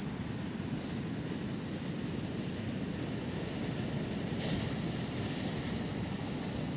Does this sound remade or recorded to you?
recorded